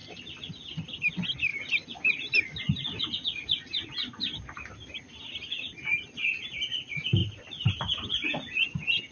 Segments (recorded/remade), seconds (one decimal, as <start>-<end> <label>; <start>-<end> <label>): 0.0-1.1 remade; 1.1-1.5 recorded; 1.5-2.7 remade; 2.7-7.2 recorded; 7.2-7.7 remade; 7.7-9.1 recorded

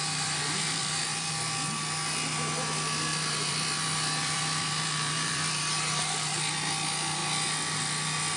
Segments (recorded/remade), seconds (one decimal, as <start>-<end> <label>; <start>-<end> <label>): 0.0-1.3 remade; 1.3-3.1 recorded; 3.1-5.6 remade; 5.6-8.4 recorded

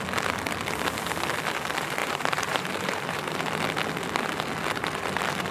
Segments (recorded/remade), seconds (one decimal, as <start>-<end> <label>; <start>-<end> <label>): 0.0-2.0 recorded; 2.0-3.4 remade; 3.4-5.5 recorded

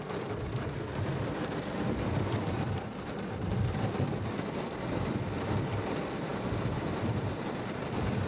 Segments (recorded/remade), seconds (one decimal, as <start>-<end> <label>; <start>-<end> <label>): 0.0-8.3 remade

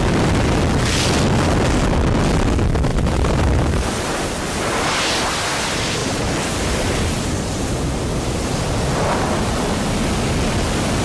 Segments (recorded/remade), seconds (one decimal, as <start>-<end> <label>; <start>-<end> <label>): 0.0-2.9 recorded; 2.9-4.3 remade; 4.3-6.0 recorded; 6.0-6.9 remade; 6.9-11.0 recorded

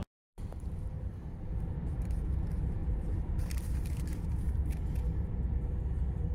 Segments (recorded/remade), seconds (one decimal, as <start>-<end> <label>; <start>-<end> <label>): 0.0-6.3 remade

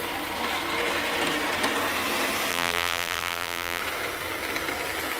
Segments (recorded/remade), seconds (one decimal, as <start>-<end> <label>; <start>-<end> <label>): 0.0-2.5 recorded; 2.5-3.8 remade; 3.8-5.2 recorded